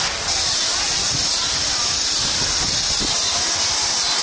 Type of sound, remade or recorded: recorded